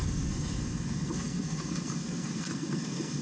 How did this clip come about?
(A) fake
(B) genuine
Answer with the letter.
A